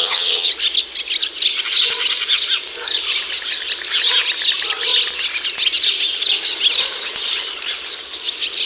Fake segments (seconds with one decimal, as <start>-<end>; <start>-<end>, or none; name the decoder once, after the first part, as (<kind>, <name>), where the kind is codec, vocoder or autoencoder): 0.0-0.5 (vocoder, HiFi-GAN)